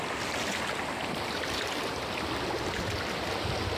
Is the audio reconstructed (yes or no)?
no